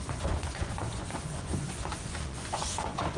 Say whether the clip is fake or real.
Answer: fake